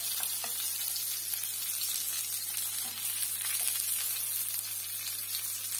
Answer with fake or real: real